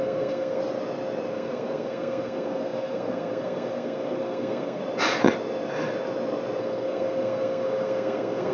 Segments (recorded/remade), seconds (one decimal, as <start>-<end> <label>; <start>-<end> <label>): 0.0-0.6 remade; 0.6-1.3 recorded; 1.3-4.8 remade; 4.8-6.6 recorded; 6.6-8.5 remade